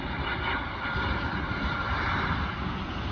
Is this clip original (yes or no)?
yes